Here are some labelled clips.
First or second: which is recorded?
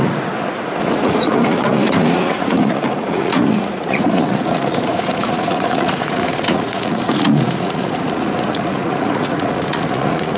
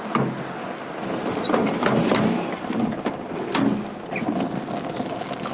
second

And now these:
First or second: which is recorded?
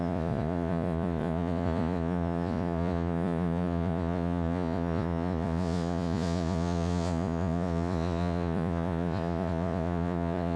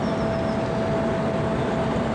second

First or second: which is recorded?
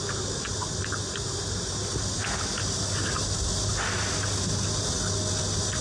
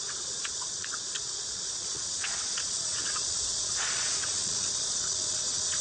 first